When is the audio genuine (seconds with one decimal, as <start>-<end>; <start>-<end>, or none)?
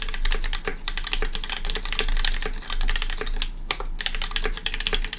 0.0-5.2